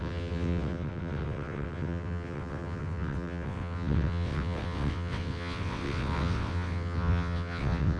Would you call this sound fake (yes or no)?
yes